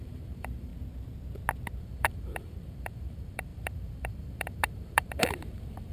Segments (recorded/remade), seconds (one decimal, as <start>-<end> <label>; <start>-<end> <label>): 0.0-0.7 remade; 0.7-1.8 recorded; 1.8-5.9 remade